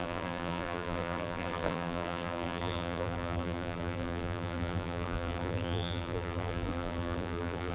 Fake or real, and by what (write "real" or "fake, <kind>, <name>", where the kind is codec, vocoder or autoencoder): fake, vocoder, BigVGAN v2